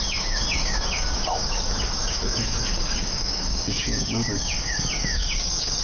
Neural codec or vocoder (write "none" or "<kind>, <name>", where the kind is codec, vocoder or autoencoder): codec, DAC